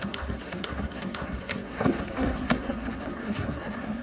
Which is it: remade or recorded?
remade